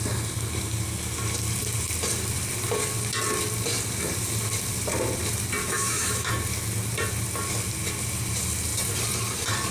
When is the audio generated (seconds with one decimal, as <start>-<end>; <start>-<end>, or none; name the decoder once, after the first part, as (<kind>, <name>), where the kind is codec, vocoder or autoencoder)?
5.6-6.3 (autoencoder, DAC-VAE)